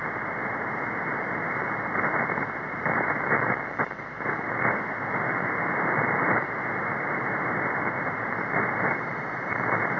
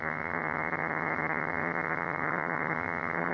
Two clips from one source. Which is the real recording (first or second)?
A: first